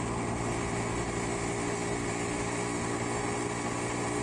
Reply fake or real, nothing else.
real